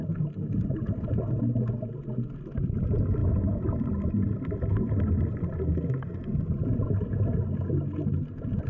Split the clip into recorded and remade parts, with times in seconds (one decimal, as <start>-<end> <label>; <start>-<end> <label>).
0.0-8.7 recorded